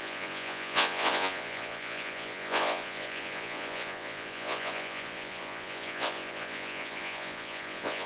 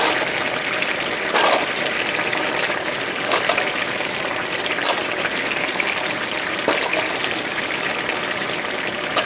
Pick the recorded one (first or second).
second